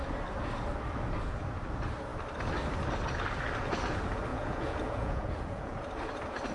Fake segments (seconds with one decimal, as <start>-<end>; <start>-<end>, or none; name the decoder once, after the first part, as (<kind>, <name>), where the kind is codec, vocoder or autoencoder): 4.3-5.8 (vocoder, Vocos)